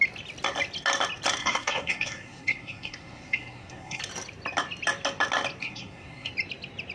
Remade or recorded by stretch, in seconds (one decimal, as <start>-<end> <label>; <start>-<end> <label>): 0.0-1.4 recorded; 1.4-4.0 remade; 4.0-5.6 recorded; 5.6-6.3 remade; 6.3-6.9 recorded